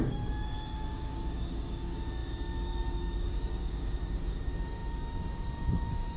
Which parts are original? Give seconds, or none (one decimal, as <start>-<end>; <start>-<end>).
none